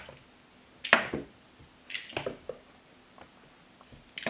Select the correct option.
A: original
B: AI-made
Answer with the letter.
A